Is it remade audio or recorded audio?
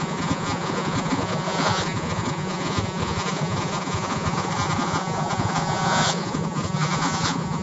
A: remade